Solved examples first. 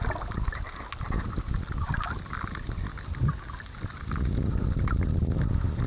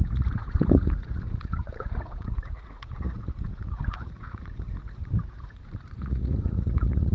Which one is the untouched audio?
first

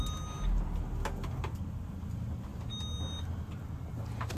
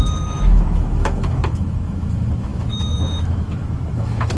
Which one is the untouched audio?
first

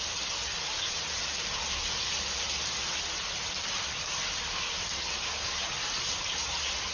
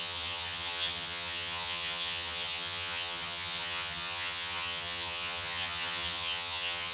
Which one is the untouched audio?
first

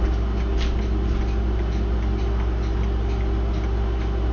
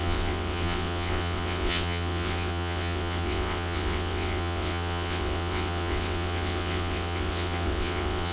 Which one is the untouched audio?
first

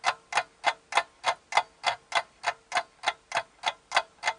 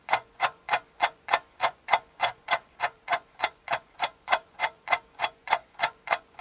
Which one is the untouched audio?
first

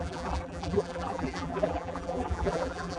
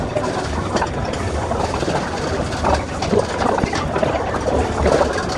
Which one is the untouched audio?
second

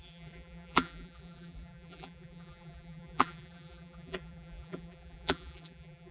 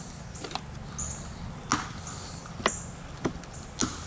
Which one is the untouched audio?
second